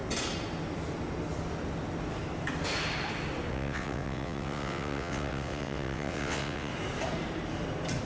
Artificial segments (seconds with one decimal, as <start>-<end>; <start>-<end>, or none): 3.5-6.7